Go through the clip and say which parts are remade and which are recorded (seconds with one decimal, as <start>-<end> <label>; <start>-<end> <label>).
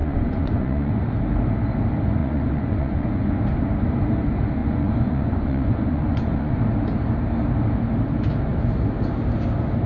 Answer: 0.0-1.1 remade; 1.1-2.2 recorded; 2.2-3.3 remade; 3.3-4.6 recorded; 4.6-6.6 remade; 6.6-9.9 recorded